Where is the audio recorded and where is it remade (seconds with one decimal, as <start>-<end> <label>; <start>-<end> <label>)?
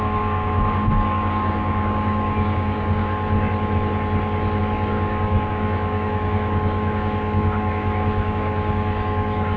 0.0-3.0 remade; 3.0-4.6 recorded; 4.6-9.6 remade